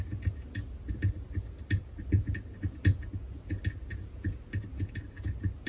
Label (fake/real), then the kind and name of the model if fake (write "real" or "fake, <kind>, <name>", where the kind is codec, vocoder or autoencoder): real